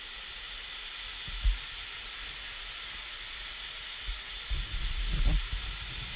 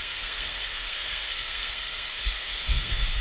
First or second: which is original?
first